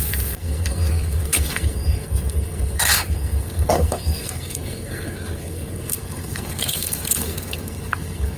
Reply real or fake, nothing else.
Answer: fake